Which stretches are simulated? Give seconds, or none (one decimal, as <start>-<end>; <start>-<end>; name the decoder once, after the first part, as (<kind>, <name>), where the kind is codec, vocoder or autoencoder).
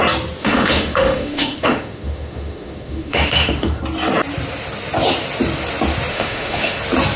0.4-3.8 (autoencoder, DAC-VAE); 6.1-6.8